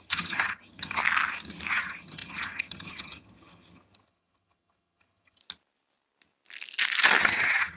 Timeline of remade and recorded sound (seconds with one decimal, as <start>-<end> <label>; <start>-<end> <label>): 0.0-1.0 remade; 1.0-1.7 recorded; 1.7-5.4 remade; 5.4-7.2 recorded; 7.2-7.8 remade